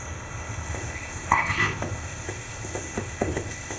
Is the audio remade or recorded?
remade